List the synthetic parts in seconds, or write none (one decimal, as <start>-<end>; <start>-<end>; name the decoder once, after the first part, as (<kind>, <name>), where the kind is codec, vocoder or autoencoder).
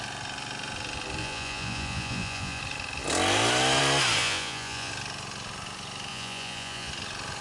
1.2-2.6 (vocoder, Vocos); 4.2-4.9; 6.1-6.9